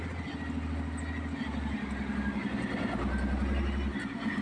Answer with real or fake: real